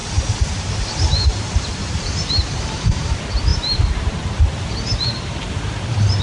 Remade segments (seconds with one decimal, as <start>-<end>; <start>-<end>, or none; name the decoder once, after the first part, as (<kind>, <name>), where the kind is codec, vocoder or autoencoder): 0.0-6.2 (vocoder, BigVGAN v2)